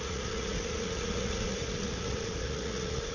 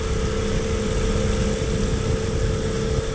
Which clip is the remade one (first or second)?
first